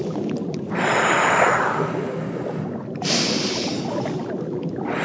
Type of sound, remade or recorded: recorded